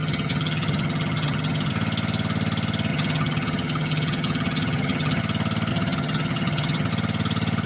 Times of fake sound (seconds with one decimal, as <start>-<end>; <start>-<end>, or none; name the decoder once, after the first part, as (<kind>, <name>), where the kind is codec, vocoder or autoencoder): 0.0-1.7 (vocoder, HiFi-GAN); 2.9-5.2; 5.7-6.9